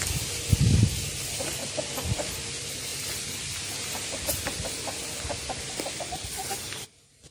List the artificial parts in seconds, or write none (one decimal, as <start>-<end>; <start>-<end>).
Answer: 6.4-7.3